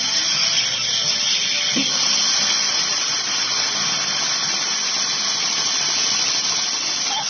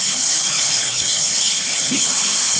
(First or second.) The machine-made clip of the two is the second